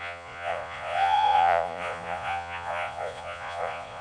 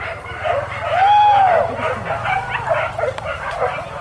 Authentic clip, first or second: second